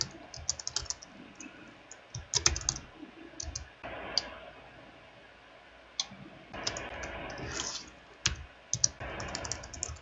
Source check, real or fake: real